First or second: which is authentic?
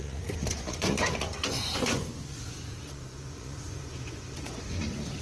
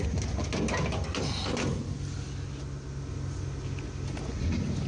second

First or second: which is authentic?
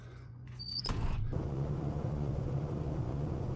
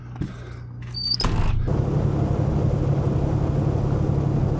second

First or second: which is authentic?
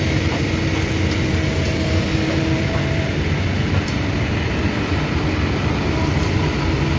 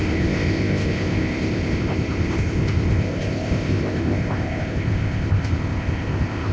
first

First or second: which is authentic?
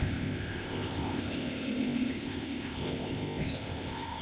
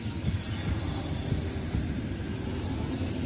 second